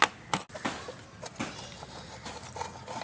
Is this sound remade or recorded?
recorded